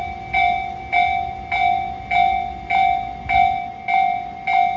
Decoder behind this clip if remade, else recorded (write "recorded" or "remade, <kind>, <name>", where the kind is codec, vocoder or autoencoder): recorded